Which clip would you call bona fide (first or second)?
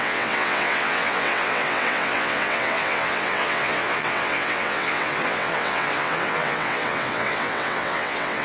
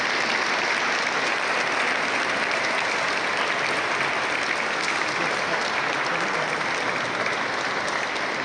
second